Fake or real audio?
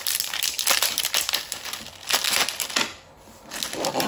real